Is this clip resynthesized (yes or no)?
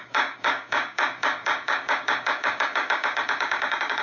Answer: yes